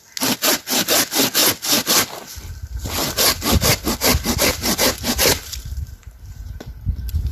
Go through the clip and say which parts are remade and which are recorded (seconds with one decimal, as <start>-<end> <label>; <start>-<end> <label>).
0.0-4.1 recorded; 4.1-6.6 remade; 6.6-7.3 recorded